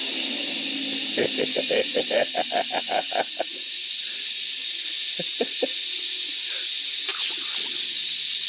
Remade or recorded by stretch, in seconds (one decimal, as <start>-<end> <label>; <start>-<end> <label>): 0.0-8.5 recorded